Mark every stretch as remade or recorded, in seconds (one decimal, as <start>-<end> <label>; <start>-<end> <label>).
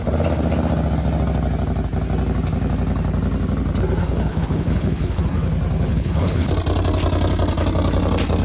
0.0-4.0 recorded; 4.0-5.2 remade; 5.2-5.9 recorded; 5.9-6.5 remade; 6.5-8.4 recorded